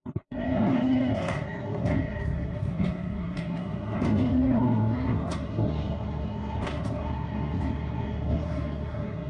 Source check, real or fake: fake